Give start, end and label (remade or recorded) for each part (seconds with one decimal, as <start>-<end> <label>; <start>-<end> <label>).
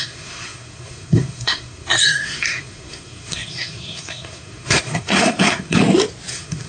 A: 0.0-5.8 remade; 5.8-6.3 recorded; 6.3-6.7 remade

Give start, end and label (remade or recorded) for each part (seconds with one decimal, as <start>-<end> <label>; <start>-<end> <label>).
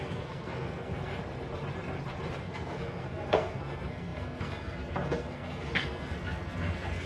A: 0.0-1.2 remade; 1.2-2.4 recorded; 2.4-7.1 remade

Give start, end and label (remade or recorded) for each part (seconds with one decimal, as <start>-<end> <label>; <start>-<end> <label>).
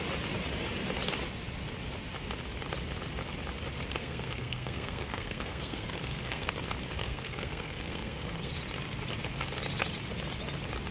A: 0.0-4.0 recorded; 4.0-6.5 remade; 6.5-7.0 recorded; 7.0-8.5 remade; 8.5-10.9 recorded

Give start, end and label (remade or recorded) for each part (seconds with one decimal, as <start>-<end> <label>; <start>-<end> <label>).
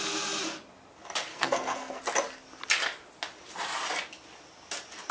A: 0.0-1.3 recorded; 1.3-2.0 remade; 2.0-5.1 recorded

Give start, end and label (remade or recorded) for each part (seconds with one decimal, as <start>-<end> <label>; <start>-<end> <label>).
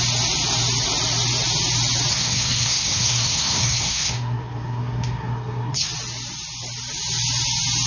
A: 0.0-2.1 recorded; 2.1-5.9 remade; 5.9-7.9 recorded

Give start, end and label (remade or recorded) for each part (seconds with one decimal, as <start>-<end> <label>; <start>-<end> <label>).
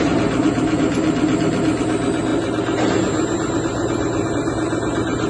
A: 0.0-5.3 recorded